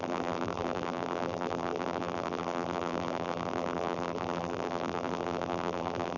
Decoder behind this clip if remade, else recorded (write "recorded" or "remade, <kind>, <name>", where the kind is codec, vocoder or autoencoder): remade, vocoder, BigVGAN v2